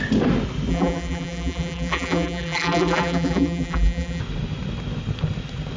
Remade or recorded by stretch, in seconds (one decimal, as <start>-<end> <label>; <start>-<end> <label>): 0.0-0.7 recorded; 0.7-4.2 remade; 4.2-5.8 recorded